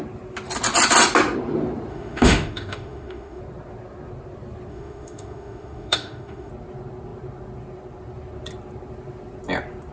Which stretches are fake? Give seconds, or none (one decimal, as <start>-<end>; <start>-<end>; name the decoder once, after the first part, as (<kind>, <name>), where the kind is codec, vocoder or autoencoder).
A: 1.9-3.4 (autoencoder, DAC-VAE); 4.7-6.5